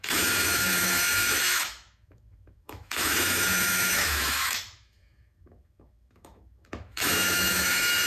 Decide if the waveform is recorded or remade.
remade